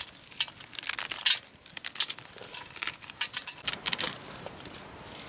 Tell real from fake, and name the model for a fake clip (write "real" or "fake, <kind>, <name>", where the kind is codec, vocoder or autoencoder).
real